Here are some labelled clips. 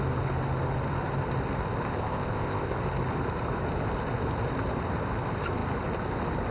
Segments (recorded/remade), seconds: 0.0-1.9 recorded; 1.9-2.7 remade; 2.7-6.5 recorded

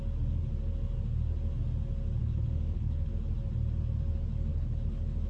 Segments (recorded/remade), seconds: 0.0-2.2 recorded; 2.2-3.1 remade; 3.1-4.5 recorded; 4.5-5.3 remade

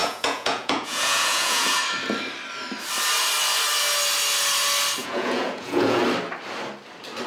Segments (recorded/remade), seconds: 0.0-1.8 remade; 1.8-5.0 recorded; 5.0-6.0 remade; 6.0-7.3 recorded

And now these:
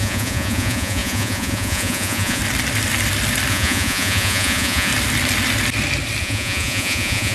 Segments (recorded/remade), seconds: 0.0-2.4 remade; 2.4-3.5 recorded; 3.5-4.9 remade; 4.9-6.2 recorded; 6.2-7.3 remade

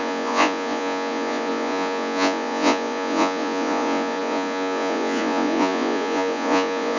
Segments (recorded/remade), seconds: 0.0-7.0 remade